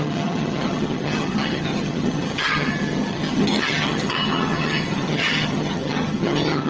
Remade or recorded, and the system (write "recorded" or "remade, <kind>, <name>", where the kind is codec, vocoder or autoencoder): remade, vocoder, HiFi-GAN